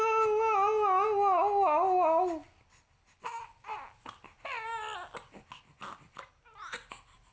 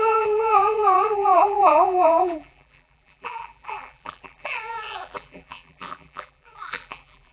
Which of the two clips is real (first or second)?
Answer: first